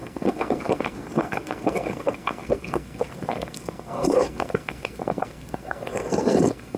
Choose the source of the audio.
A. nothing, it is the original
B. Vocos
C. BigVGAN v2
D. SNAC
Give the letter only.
D